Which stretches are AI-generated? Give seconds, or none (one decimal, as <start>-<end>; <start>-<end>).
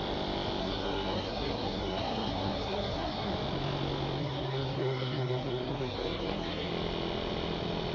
0.6-3.3; 4.2-6.7